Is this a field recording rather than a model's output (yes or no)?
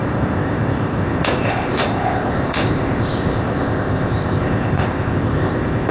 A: no